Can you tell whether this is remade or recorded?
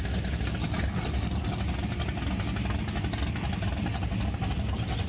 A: recorded